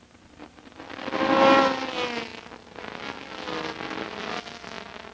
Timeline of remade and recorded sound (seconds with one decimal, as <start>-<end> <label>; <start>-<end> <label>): 0.0-5.1 recorded